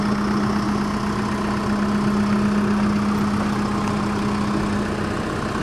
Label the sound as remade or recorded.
recorded